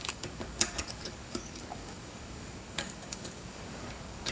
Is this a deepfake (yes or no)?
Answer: yes